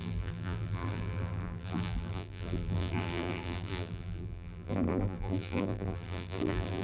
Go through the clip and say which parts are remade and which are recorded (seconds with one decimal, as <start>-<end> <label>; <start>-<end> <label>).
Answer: 0.0-6.8 remade